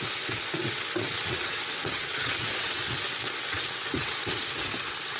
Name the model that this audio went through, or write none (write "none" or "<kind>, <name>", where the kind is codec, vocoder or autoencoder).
vocoder, WaveNeXt